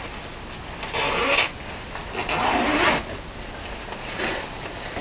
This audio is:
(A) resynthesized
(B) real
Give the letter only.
B